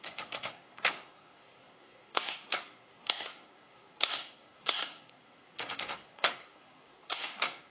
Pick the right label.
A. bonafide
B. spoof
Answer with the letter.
B